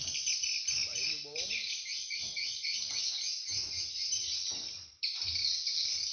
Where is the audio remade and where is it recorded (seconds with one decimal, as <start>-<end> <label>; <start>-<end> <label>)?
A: 0.0-0.9 recorded; 0.9-2.5 remade; 2.5-6.1 recorded